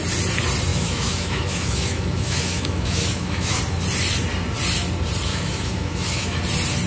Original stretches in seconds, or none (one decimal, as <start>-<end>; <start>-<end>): 0.0-0.7; 3.6-5.3; 6.4-6.9